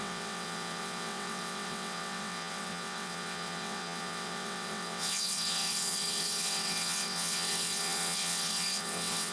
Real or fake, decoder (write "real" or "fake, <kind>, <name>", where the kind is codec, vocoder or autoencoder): fake, vocoder, WaveNeXt